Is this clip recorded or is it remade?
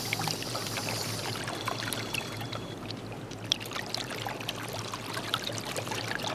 recorded